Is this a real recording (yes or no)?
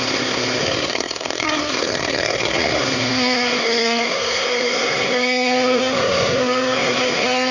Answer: no